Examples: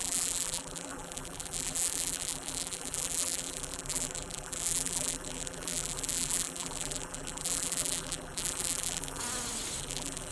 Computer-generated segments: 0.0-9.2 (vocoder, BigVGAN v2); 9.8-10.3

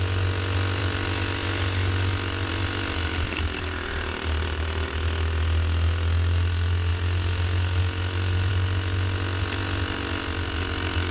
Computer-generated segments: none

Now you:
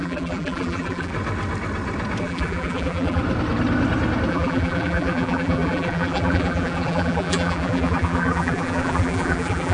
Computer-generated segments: 0.0-1.1 (vocoder, BigVGAN v2); 2.2-3.2; 4.3-9.7

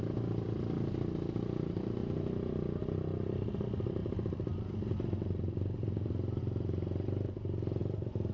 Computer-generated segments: 0.0-2.0 (vocoder, BigVGAN v2); 3.3-7.8